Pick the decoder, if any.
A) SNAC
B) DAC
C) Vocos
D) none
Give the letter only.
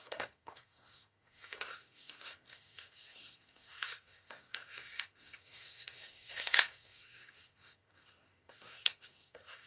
A